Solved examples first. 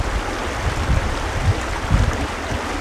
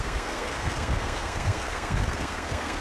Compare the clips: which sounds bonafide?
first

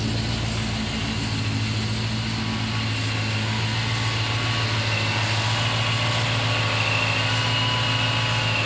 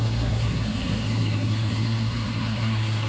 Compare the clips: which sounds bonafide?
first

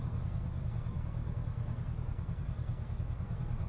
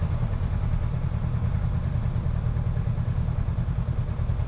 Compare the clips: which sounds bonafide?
second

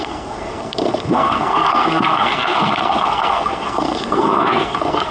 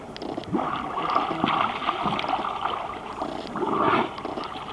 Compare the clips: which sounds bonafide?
second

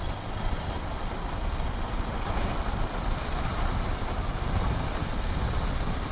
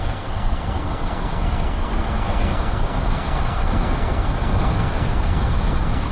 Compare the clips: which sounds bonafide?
first